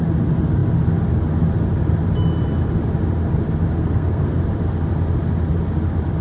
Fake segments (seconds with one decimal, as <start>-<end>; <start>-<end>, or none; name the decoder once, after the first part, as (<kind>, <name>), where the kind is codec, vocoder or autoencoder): 3.8-4.4 (codec, SNAC)